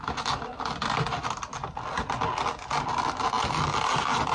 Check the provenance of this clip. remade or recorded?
recorded